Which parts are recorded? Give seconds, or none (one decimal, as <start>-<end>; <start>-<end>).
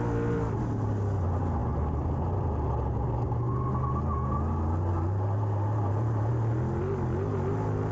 0.0-7.9